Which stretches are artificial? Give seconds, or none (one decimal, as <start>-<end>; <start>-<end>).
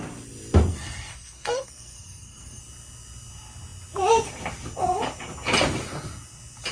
0.7-2.6